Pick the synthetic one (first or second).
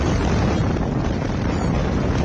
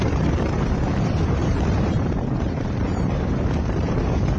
second